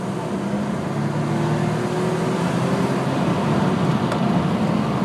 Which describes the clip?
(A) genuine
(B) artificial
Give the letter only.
A